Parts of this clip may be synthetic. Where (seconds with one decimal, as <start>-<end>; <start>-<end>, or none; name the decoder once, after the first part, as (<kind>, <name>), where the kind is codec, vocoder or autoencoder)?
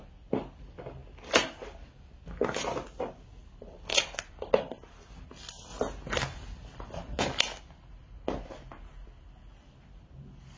none